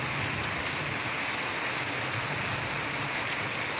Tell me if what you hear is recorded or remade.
recorded